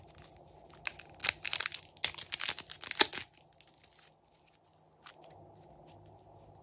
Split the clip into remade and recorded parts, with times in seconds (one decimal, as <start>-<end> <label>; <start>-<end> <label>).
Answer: 0.0-6.6 recorded